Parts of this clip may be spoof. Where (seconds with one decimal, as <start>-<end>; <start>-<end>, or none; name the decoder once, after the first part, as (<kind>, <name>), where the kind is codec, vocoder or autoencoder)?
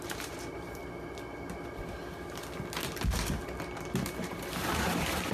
0.0-0.8 (vocoder, BigVGAN v2); 4.0-5.3